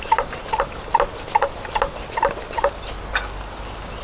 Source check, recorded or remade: recorded